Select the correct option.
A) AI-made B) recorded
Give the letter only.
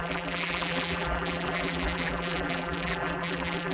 A